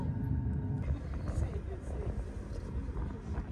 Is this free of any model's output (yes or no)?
yes